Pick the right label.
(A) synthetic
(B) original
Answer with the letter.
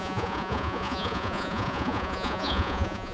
A